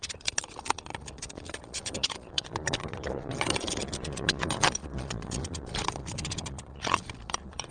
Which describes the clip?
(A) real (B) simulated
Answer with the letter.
B